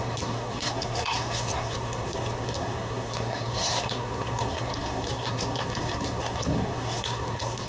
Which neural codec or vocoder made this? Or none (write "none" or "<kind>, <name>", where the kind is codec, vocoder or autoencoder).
codec, SNAC